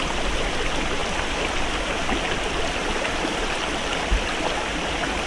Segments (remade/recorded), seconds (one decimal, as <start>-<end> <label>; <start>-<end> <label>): 0.0-2.8 recorded; 2.8-3.6 remade; 3.6-5.3 recorded